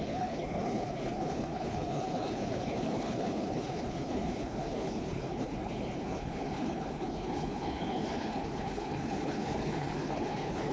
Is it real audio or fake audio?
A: fake